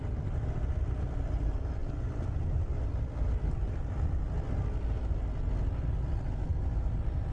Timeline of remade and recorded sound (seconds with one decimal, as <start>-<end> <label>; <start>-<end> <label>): 0.0-7.3 recorded